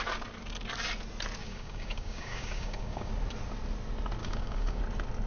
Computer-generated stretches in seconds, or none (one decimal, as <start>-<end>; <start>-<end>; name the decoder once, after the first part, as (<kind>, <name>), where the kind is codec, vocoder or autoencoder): 1.4-3.1 (codec, DAC); 4.2-4.8